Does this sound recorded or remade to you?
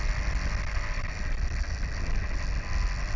recorded